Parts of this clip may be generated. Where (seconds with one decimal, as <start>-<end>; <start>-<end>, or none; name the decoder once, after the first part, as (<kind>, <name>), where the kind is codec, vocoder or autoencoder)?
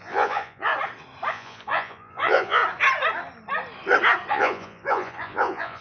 0.0-0.7 (vocoder, Vocos); 1.3-2.6; 4.3-5.8